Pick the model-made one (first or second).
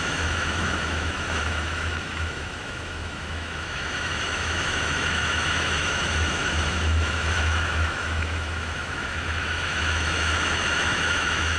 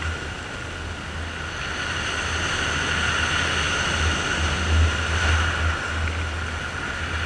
first